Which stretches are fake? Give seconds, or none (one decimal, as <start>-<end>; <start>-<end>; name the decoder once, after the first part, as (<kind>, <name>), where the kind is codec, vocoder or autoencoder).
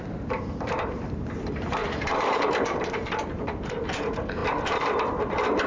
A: 0.0-4.4 (vocoder, BigVGAN v2)